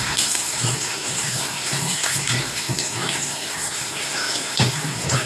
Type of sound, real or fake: fake